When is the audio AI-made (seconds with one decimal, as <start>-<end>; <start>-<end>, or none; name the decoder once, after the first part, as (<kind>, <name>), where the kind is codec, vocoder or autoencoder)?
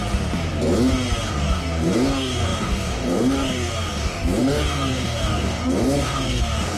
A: 1.3-6.8 (codec, DAC)